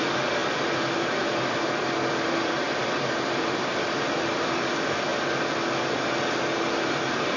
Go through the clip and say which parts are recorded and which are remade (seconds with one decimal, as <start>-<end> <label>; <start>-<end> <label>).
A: 0.0-5.1 remade; 5.1-7.4 recorded